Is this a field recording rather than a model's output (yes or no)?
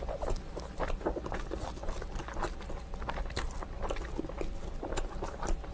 yes